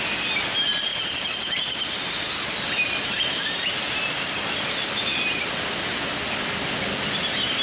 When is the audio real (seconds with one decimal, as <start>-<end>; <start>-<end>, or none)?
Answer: 0.0-0.9; 5.5-7.6